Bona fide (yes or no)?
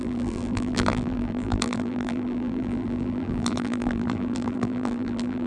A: no